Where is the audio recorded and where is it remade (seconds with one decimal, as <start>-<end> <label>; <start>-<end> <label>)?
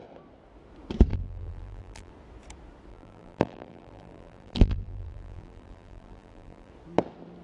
0.0-1.1 recorded; 1.1-2.1 remade; 2.1-2.9 recorded; 2.9-6.7 remade; 6.7-7.4 recorded